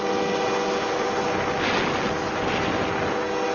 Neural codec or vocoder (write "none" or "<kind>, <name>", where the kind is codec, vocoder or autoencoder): none